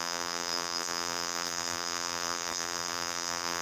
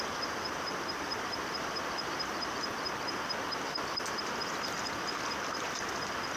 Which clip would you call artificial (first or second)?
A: first